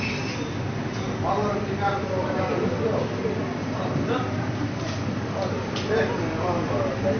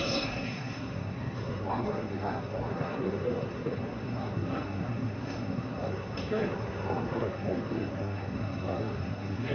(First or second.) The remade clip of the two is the second